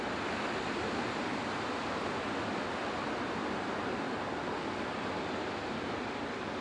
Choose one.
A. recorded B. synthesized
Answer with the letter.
A